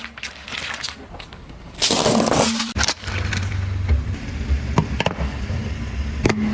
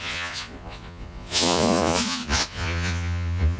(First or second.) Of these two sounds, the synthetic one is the second